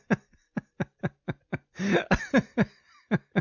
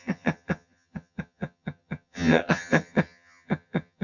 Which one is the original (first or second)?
first